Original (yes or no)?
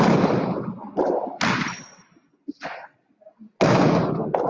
yes